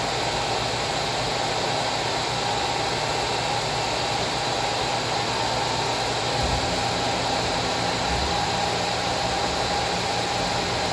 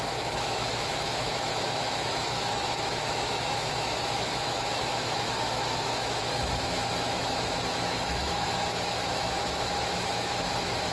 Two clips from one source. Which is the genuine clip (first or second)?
first